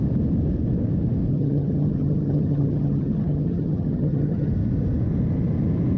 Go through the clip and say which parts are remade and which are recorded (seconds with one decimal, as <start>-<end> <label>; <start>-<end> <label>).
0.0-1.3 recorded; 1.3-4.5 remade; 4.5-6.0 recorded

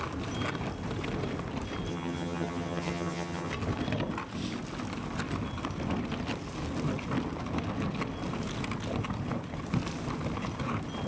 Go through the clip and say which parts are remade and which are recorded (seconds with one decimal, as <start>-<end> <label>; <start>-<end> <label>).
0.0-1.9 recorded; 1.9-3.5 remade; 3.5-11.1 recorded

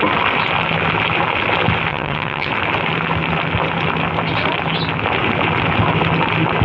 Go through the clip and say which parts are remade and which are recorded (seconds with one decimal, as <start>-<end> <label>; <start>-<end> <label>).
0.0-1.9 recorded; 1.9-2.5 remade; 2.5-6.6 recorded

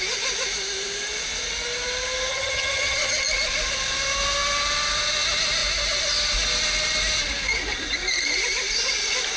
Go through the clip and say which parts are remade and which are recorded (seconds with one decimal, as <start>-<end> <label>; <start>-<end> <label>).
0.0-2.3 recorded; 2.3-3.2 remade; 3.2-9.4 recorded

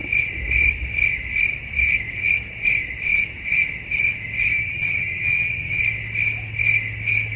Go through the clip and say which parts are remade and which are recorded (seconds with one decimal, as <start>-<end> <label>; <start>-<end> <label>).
0.0-4.5 recorded; 4.5-5.8 remade; 5.8-7.4 recorded

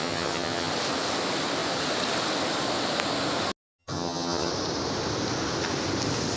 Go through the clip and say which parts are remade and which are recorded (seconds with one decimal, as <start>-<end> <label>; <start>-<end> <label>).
0.0-0.7 remade; 0.7-3.8 recorded; 3.8-4.5 remade; 4.5-6.4 recorded